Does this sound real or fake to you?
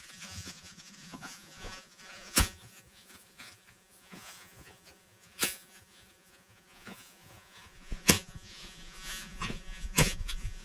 fake